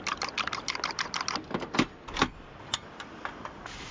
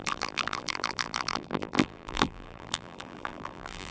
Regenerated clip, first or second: second